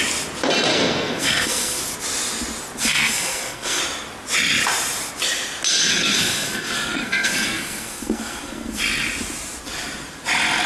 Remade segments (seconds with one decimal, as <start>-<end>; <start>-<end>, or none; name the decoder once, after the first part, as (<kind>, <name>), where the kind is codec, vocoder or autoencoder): 0.7-1.8 (codec, SNAC); 2.8-3.8; 5.7-8.8